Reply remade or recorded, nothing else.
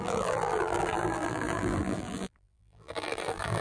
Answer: remade